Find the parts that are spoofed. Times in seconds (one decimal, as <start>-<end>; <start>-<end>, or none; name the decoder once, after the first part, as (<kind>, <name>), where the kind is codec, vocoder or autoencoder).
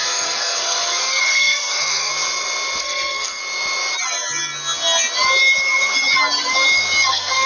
0.0-2.1 (codec, SNAC); 2.8-3.4; 7.1-7.5